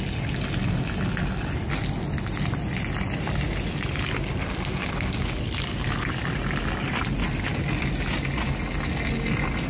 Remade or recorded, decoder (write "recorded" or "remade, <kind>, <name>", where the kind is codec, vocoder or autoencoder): recorded